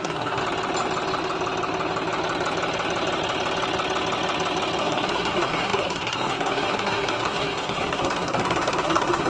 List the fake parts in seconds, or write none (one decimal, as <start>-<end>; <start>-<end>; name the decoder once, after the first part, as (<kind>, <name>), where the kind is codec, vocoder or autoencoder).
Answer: 0.0-0.4 (codec, SNAC); 4.8-9.3